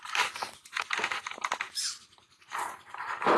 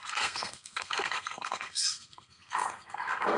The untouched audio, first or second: first